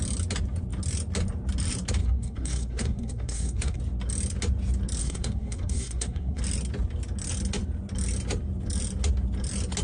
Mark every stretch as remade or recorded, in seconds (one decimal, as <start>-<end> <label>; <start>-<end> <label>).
0.0-2.0 recorded; 2.0-3.8 remade; 3.8-5.0 recorded; 5.0-6.4 remade; 6.4-9.8 recorded